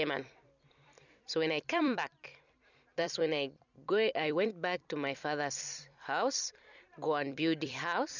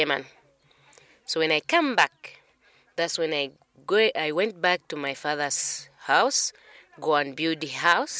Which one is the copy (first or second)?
first